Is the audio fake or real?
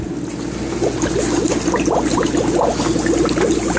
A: real